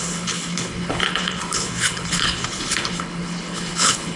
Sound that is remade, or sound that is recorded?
remade